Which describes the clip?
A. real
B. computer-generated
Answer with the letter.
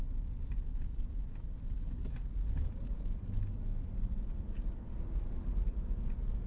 B